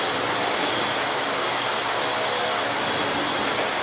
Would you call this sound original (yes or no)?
yes